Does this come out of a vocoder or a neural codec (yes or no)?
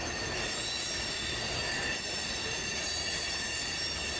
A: no